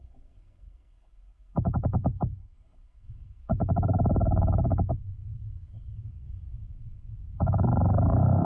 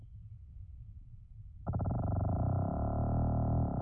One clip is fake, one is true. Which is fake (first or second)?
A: first